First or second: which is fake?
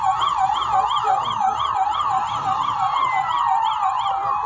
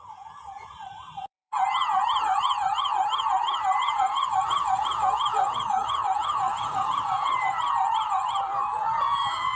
second